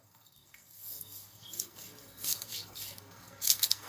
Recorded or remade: remade